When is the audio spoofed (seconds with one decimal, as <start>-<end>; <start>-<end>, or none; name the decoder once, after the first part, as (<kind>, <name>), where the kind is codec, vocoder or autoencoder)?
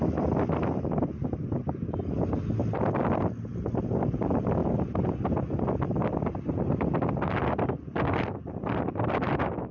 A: none